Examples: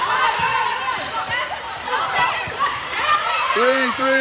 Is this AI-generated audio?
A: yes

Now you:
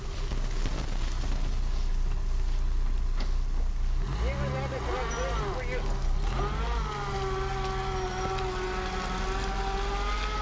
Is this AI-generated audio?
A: no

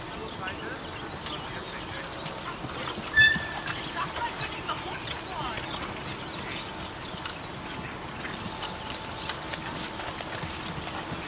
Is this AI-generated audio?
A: no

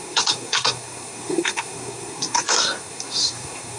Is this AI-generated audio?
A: yes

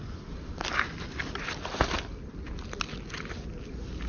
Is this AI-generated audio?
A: no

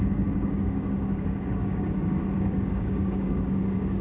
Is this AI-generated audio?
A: yes